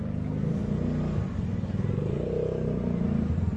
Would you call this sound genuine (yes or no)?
yes